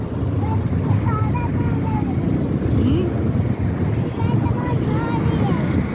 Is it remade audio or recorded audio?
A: recorded